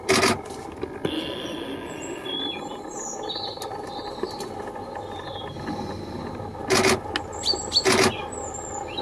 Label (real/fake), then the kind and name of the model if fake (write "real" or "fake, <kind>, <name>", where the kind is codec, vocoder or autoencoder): real